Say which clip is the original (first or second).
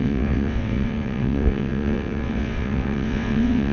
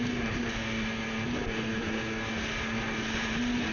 second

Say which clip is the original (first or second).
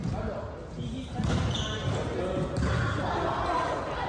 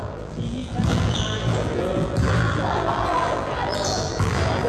first